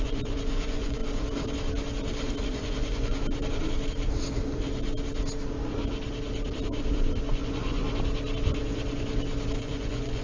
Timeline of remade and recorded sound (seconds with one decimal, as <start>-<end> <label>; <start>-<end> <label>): 0.0-1.0 remade; 1.0-2.4 recorded; 2.4-3.2 remade; 3.2-7.3 recorded; 7.3-7.8 remade; 7.8-9.6 recorded; 9.6-10.2 remade